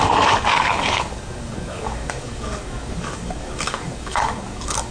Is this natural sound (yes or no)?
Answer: no